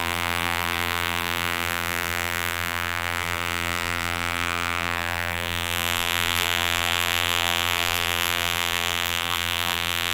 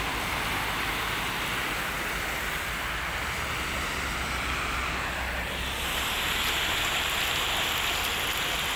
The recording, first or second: second